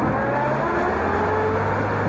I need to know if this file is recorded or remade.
recorded